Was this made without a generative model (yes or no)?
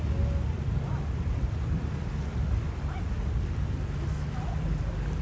yes